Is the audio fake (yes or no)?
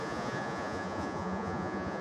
yes